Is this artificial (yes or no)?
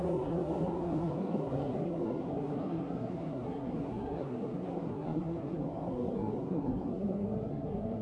yes